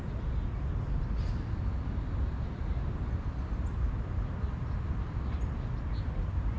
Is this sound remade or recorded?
recorded